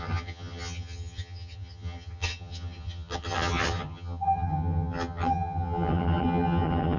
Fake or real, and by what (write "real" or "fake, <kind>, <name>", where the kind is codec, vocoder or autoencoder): fake, vocoder, HiFi-GAN